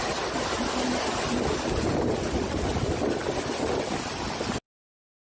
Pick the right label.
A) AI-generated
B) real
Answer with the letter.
B